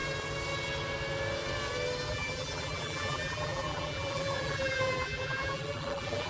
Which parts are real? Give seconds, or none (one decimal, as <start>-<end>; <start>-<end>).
0.0-2.1